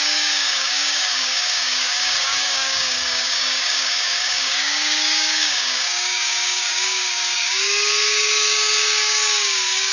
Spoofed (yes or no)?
yes